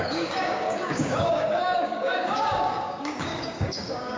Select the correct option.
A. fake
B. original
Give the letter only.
A